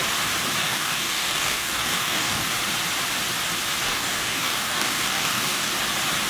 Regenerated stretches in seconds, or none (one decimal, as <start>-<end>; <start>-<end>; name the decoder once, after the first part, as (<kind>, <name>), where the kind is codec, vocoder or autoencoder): 0.6-2.5 (codec, DAC); 3.8-5.7